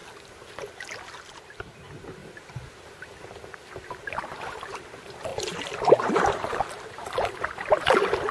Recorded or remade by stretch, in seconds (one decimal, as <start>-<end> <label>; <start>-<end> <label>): 0.0-5.3 recorded; 5.3-7.3 remade; 7.3-8.3 recorded

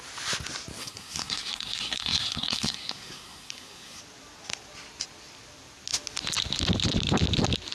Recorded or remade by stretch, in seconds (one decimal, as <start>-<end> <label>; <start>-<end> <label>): 0.0-0.8 recorded; 0.8-4.0 remade; 4.0-7.7 recorded

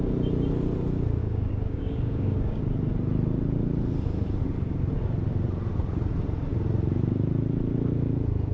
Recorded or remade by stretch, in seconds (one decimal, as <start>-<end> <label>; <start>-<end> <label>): 0.0-1.2 recorded; 1.2-2.6 remade; 2.6-8.5 recorded